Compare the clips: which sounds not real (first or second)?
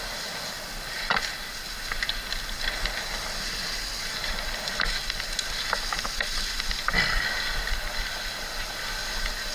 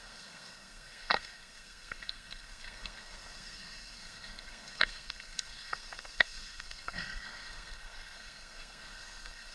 second